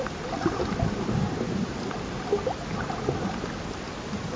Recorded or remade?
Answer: recorded